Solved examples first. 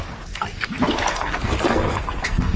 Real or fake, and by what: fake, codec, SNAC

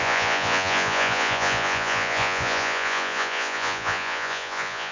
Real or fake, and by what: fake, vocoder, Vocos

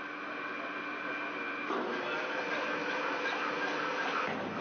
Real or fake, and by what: real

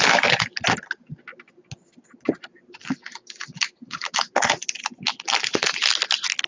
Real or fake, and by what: real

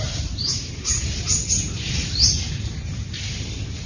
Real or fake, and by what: fake, vocoder, BigVGAN v2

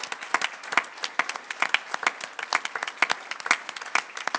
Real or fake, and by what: real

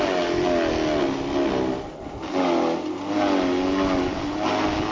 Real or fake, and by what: real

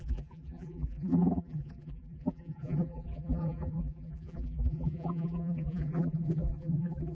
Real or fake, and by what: fake, vocoder, BigVGAN v2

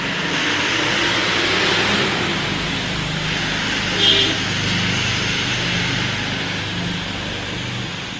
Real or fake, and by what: real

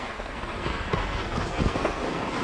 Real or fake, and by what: fake, codec, SNAC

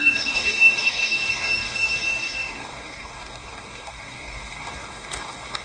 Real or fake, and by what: fake, codec, DAC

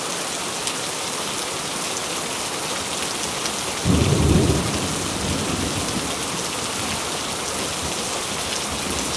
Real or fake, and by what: real